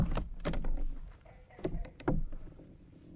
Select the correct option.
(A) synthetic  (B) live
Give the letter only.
A